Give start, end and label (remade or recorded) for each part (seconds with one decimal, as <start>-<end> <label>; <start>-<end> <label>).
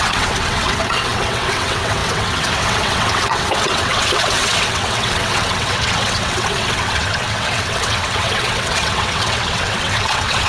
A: 0.0-10.5 remade